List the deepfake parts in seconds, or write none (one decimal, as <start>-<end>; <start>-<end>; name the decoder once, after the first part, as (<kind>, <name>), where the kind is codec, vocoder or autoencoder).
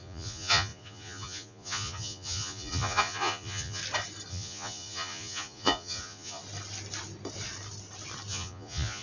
0.0-3.8 (vocoder, Vocos); 4.3-6.4; 8.3-9.0